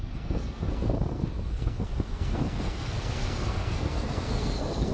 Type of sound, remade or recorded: remade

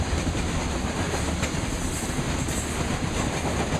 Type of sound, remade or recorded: recorded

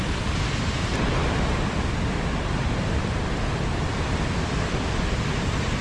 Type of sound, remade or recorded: remade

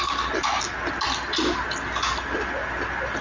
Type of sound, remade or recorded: recorded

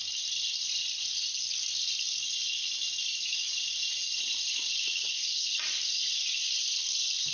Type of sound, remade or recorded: recorded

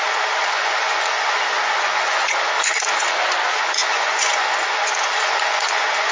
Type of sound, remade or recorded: remade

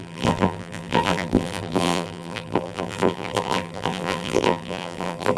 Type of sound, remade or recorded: remade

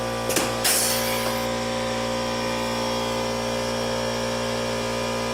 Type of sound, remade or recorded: recorded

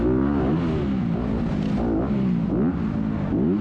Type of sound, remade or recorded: recorded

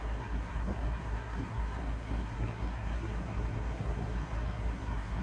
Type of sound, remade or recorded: remade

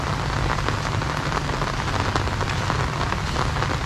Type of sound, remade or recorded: recorded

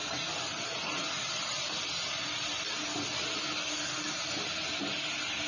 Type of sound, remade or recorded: recorded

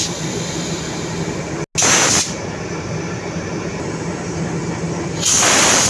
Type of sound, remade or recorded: recorded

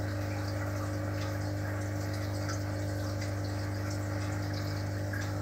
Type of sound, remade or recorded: recorded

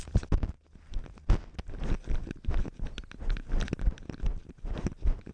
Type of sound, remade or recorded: recorded